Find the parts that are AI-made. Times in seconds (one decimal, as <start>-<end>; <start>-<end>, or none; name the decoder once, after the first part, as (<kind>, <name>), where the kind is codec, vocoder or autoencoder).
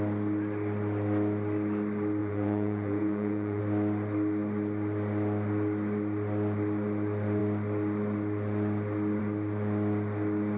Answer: 2.2-3.6 (vocoder, Vocos)